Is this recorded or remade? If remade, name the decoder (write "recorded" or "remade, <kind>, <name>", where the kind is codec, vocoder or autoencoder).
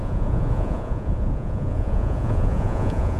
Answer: remade, vocoder, Vocos